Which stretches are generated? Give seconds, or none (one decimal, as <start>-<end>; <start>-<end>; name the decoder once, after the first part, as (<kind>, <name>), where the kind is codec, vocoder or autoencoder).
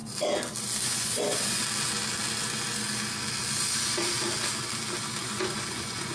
0.8-1.6 (vocoder, Vocos); 5.2-6.1